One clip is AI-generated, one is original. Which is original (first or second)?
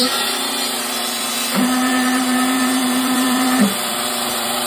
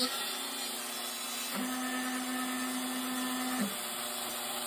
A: second